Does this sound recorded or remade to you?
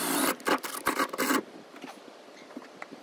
recorded